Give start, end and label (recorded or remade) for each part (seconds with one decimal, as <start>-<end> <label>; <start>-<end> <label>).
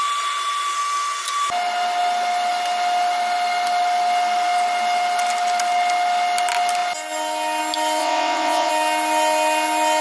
0.0-8.0 recorded; 8.0-8.7 remade; 8.7-10.0 recorded